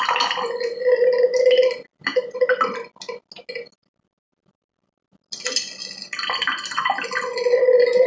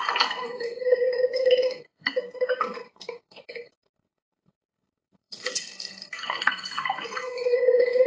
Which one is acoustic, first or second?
first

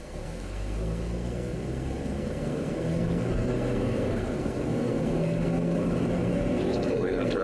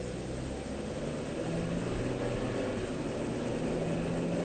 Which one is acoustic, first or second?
second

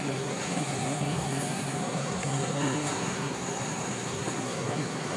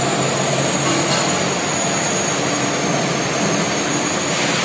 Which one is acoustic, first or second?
second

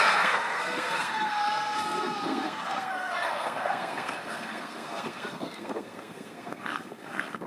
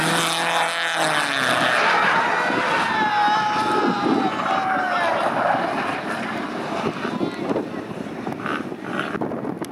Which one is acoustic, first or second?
second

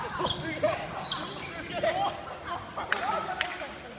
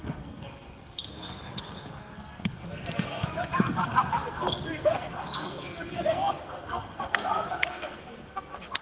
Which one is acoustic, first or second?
first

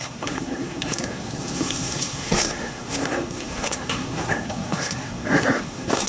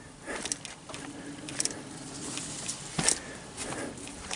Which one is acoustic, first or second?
second